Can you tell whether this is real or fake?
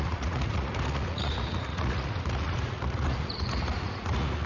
fake